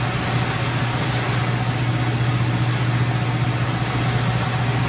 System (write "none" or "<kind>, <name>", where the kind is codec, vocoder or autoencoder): none